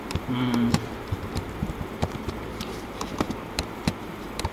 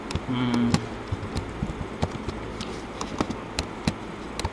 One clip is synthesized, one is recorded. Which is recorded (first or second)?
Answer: second